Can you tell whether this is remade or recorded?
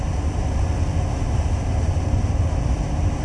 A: recorded